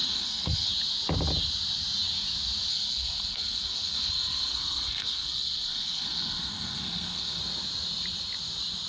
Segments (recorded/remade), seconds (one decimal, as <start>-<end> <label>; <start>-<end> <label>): 0.0-0.7 remade; 0.7-2.7 recorded; 2.7-7.4 remade; 7.4-8.9 recorded